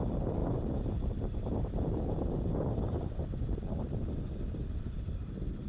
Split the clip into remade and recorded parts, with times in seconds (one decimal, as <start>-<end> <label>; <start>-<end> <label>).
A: 0.0-5.7 recorded